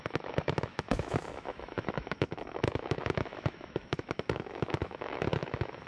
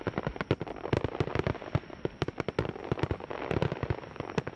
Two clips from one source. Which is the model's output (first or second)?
first